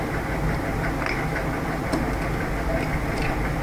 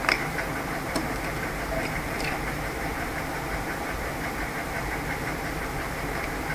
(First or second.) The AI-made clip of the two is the second